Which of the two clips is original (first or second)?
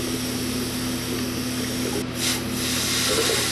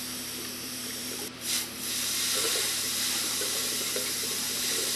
first